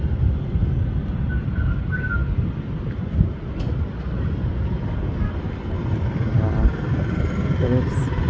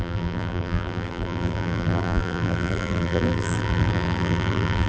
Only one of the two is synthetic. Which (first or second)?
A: second